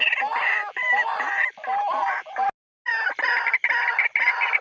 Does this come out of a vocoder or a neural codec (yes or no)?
no